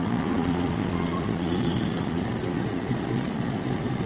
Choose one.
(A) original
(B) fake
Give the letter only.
B